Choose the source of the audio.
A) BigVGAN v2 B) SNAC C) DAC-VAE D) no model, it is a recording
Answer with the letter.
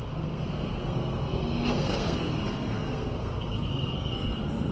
B